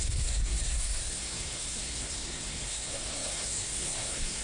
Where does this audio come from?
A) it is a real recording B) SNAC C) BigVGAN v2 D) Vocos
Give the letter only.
B